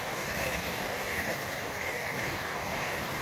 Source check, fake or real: fake